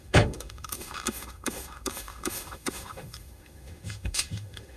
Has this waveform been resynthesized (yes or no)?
yes